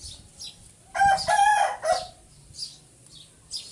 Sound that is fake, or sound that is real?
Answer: real